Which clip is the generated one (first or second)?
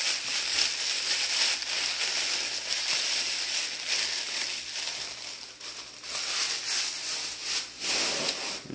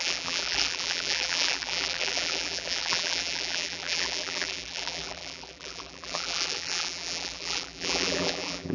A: second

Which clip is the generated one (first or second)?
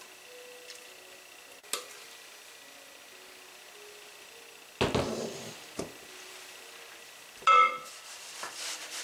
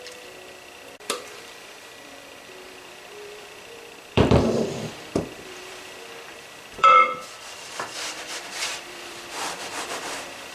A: second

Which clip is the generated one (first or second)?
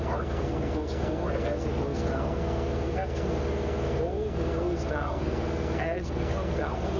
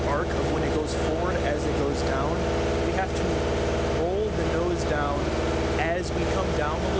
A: first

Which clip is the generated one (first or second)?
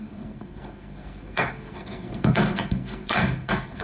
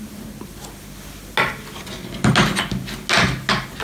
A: first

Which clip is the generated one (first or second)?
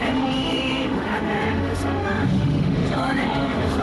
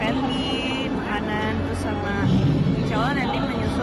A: first